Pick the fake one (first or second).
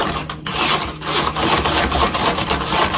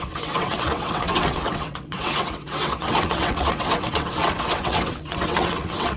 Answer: second